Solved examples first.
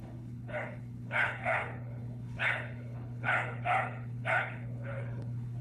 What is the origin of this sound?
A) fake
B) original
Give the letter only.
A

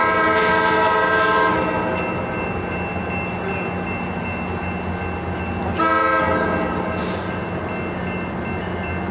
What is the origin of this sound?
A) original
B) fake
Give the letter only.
A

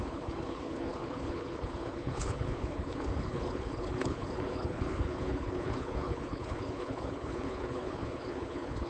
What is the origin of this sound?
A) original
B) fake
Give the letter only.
B